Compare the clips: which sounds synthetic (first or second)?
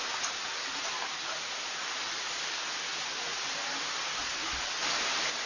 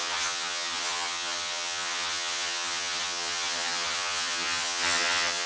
second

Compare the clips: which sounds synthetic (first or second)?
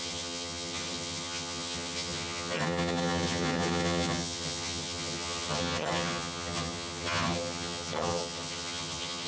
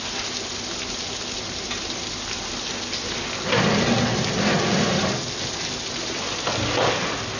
first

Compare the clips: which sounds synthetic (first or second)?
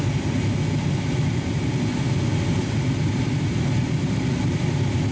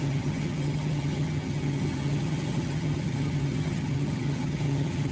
second